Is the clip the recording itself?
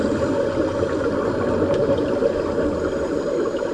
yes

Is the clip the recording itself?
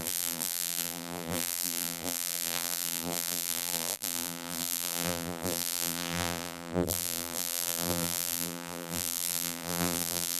no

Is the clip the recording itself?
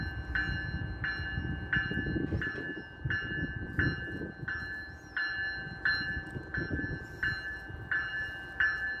yes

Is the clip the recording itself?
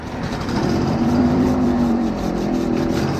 no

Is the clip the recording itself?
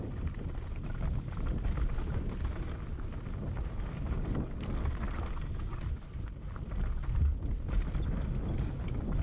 yes